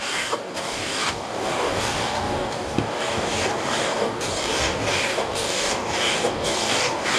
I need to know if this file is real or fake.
fake